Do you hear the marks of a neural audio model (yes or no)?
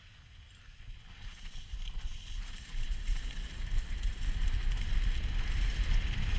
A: no